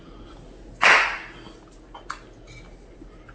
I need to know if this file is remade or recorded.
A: recorded